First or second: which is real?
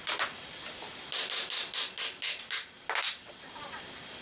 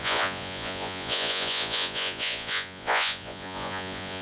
first